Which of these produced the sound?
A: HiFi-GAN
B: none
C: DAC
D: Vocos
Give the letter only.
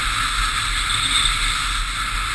B